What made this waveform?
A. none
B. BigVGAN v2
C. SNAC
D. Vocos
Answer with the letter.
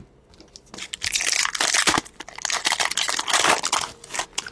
A